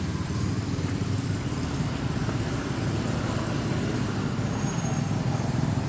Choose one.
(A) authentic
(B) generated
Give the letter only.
A